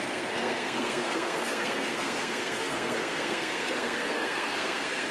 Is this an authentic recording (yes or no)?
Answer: no